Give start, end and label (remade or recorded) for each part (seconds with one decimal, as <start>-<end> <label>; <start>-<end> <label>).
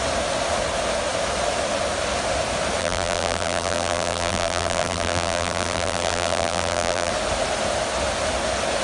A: 0.0-2.8 recorded; 2.8-7.1 remade; 7.1-8.8 recorded